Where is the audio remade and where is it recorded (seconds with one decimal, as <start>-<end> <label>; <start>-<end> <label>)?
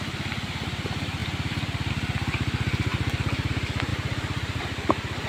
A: 0.0-1.2 recorded; 1.2-1.9 remade; 1.9-2.9 recorded; 2.9-3.5 remade; 3.5-3.9 recorded; 3.9-4.6 remade; 4.6-5.3 recorded